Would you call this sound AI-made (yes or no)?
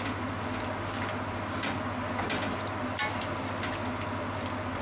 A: no